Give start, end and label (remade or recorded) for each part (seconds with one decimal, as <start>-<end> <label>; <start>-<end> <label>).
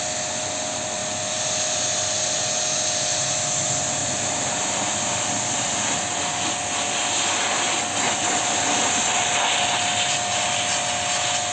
0.0-1.0 recorded; 1.0-2.4 remade; 2.4-4.0 recorded; 4.0-7.3 remade; 7.3-11.5 recorded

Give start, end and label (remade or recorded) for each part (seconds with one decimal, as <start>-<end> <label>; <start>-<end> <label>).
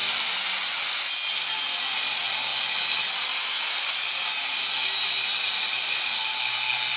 0.0-1.9 recorded; 1.9-2.5 remade; 2.5-7.0 recorded